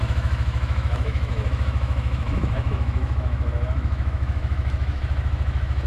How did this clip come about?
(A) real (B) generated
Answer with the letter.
B